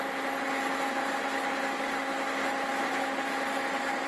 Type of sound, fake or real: real